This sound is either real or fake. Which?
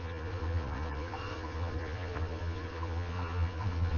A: fake